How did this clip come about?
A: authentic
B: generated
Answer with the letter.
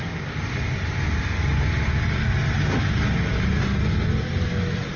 A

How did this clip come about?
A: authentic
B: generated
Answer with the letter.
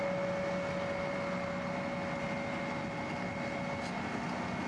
A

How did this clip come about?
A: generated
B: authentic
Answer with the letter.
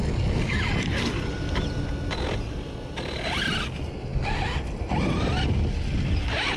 B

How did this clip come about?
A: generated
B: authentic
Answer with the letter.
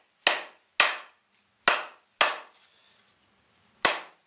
B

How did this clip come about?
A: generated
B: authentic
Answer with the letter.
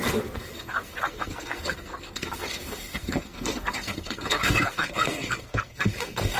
A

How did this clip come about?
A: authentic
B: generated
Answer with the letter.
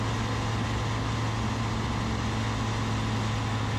A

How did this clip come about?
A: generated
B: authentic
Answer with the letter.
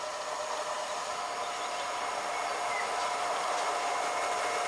B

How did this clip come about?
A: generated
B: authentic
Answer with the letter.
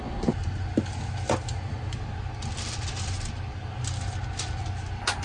B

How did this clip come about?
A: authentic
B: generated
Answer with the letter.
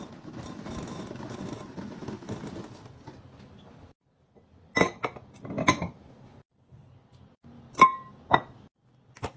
A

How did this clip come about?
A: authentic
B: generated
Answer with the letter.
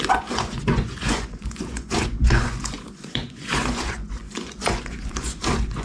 B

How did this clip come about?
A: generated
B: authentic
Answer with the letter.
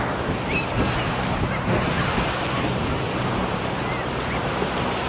B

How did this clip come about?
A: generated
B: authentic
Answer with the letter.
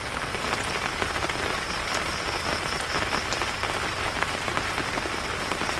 B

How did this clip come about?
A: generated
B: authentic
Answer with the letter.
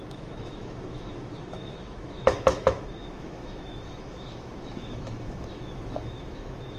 A